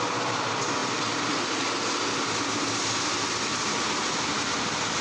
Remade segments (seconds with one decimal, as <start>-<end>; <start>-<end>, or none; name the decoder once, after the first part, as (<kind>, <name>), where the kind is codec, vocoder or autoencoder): none